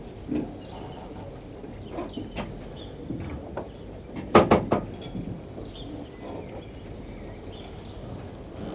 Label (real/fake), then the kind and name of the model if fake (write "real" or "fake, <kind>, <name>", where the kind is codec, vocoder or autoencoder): real